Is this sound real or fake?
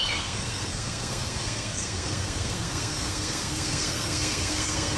fake